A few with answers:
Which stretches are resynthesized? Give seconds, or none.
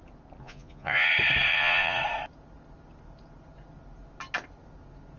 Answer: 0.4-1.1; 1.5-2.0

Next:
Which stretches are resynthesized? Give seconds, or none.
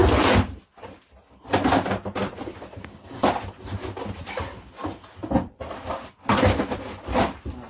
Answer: none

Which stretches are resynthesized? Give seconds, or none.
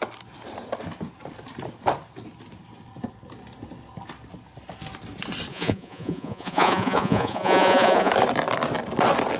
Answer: 5.5-8.1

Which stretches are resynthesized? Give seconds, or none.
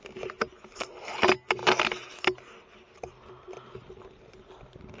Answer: none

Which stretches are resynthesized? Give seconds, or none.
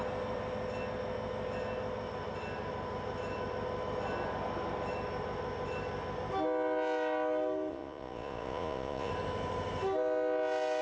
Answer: 7.7-9.1